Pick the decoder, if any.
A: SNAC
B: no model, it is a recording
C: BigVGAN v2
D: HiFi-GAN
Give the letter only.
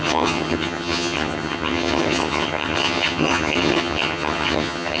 D